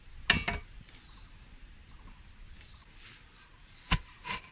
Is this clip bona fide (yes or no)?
yes